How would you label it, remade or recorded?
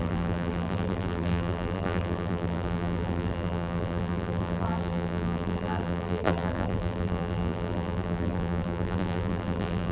remade